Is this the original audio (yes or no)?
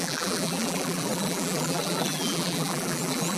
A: no